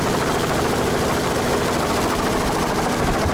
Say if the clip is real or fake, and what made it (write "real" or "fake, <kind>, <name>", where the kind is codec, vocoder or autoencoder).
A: real